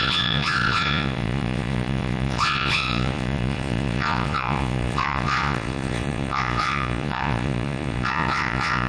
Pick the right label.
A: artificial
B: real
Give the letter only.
A